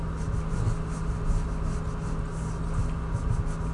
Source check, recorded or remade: recorded